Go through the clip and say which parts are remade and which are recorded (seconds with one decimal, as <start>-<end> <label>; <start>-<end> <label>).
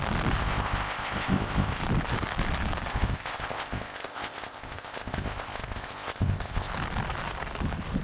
0.0-0.4 recorded; 0.4-1.8 remade; 1.8-2.9 recorded; 2.9-6.7 remade; 6.7-8.0 recorded